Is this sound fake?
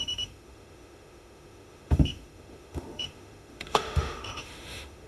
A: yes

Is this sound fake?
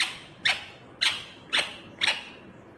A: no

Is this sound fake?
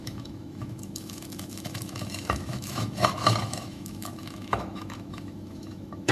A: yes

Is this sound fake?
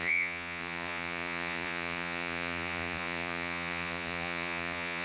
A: yes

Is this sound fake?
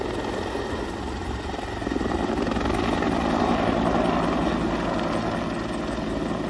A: no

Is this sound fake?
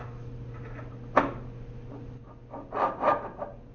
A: no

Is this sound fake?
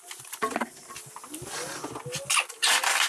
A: no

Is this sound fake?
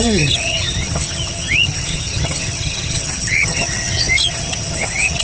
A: yes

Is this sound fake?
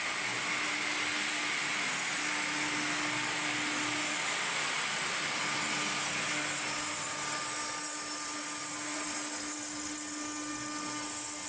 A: no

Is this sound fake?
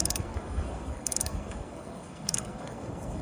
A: yes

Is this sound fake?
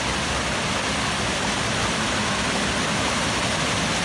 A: no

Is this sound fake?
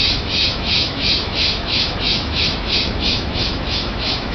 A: yes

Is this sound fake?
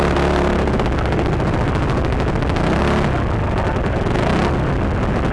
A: no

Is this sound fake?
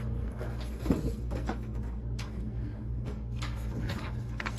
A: yes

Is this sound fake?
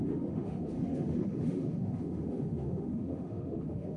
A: yes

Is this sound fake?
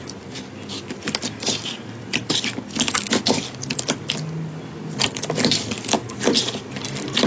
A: no